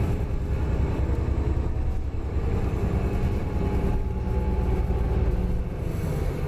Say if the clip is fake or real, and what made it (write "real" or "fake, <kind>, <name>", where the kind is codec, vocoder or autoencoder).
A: real